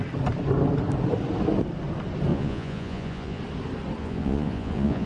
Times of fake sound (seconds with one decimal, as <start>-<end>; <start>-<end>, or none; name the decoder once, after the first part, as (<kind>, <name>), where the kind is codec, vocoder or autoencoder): 2.3-3.4 (vocoder, Vocos); 4.0-5.1